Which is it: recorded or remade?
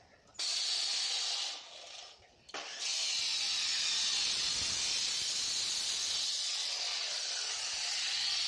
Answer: recorded